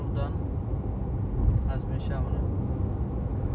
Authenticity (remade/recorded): recorded